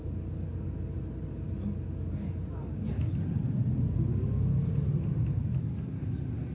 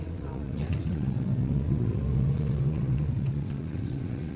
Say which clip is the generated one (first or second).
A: second